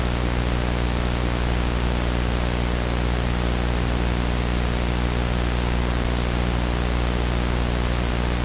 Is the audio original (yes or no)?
yes